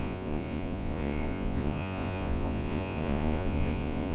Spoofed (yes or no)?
yes